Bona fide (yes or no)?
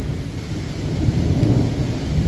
yes